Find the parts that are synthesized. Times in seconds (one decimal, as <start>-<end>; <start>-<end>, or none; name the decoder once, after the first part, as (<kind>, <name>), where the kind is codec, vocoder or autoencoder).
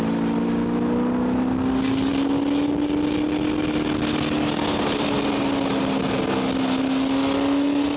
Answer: none